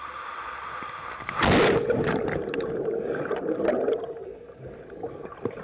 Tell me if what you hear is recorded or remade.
recorded